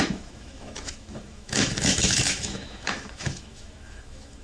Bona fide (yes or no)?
no